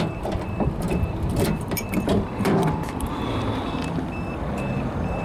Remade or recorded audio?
remade